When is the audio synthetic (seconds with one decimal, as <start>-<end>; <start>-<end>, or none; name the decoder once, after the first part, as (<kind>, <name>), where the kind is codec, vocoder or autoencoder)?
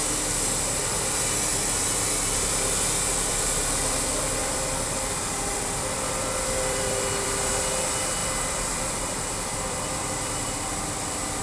4.4-7.5 (vocoder, BigVGAN v2); 8.2-11.4